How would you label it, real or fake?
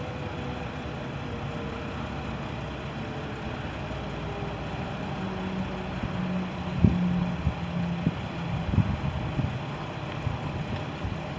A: real